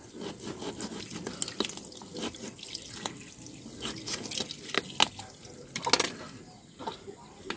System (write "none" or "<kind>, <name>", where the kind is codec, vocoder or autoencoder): none